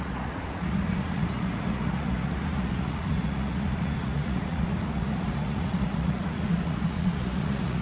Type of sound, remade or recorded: remade